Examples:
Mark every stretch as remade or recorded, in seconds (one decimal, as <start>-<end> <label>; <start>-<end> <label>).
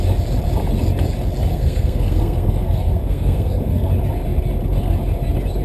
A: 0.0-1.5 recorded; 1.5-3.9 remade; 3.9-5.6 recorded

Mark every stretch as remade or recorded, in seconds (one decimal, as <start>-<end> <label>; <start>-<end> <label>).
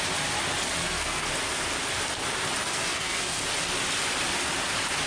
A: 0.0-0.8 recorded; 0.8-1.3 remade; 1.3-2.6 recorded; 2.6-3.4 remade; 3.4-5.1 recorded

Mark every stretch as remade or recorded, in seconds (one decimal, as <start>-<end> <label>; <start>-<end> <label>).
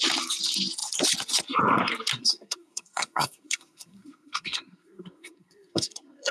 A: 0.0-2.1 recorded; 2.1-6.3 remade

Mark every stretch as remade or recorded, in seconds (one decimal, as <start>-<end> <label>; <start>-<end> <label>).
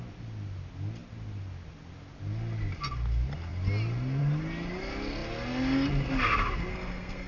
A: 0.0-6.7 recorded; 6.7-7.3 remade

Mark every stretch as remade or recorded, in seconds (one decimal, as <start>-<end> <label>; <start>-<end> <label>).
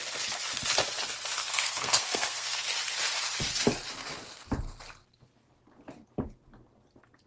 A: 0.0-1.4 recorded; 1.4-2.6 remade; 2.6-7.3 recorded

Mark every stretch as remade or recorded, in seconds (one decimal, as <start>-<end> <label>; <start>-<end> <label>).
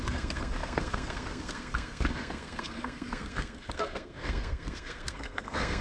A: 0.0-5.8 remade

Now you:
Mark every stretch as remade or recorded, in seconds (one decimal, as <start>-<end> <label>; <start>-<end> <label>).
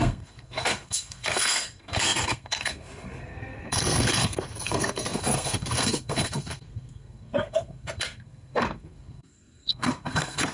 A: 0.0-10.5 remade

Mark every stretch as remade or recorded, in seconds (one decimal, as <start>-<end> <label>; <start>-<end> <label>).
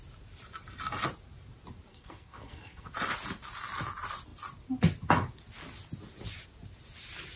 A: 0.0-1.9 recorded; 1.9-2.9 remade; 2.9-7.4 recorded